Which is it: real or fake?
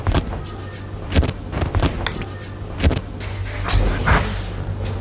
real